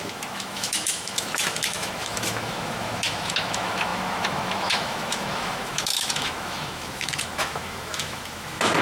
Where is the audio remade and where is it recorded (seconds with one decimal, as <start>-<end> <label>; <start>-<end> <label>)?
0.0-8.8 remade